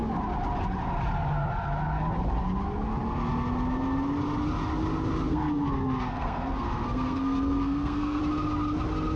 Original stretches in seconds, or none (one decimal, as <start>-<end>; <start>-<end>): 0.0-5.3; 8.2-9.2